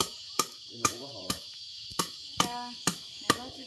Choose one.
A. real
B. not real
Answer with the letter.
B